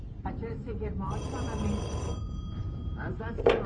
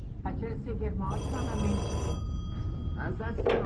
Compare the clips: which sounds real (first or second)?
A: second